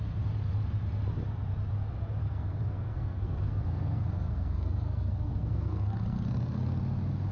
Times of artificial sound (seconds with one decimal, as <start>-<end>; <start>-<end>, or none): 2.2-6.6